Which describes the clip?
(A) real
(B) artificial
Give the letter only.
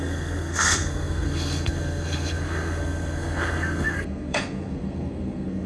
B